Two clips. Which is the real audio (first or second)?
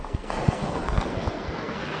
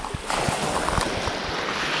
second